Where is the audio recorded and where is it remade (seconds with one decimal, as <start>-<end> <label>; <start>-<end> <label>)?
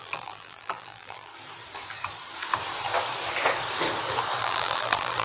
0.0-1.3 remade; 1.3-4.4 recorded; 4.4-5.2 remade